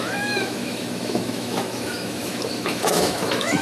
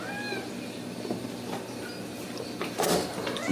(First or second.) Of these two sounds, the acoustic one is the second